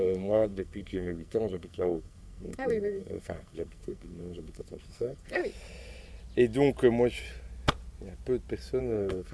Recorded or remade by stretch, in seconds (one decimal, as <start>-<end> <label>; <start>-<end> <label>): 0.0-5.4 remade; 5.4-8.8 recorded; 8.8-9.3 remade